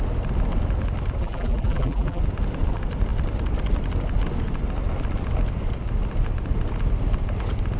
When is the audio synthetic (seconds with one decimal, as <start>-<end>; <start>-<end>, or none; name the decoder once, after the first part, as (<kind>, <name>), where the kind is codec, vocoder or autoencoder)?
1.2-2.2 (vocoder, BigVGAN v2)